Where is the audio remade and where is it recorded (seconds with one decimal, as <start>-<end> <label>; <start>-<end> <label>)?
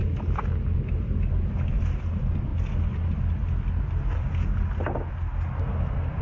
0.0-6.2 recorded